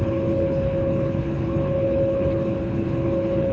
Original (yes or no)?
no